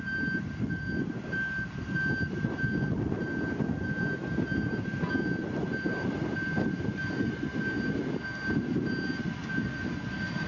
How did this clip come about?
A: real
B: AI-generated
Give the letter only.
A